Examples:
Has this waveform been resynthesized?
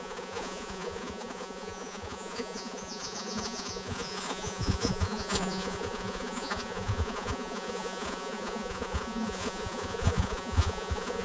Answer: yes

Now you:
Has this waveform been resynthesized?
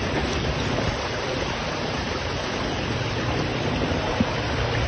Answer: yes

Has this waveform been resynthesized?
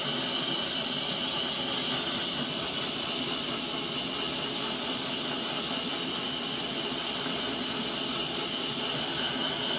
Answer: no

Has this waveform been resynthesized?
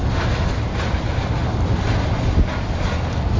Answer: no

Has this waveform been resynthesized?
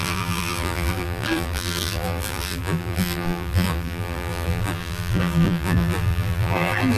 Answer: yes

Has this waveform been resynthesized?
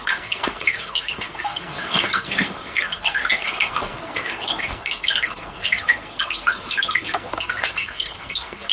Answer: yes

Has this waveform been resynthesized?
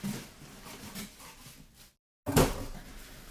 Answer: no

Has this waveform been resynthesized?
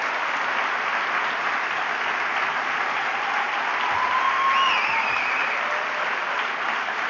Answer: no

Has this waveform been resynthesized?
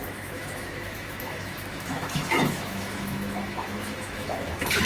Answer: yes